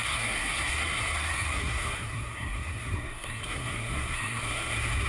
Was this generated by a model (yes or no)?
yes